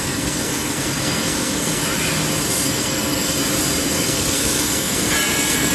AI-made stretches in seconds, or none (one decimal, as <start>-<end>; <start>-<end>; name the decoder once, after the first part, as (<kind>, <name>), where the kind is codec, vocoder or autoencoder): 0.0-1.8 (codec, SNAC); 2.5-3.4; 3.9-5.7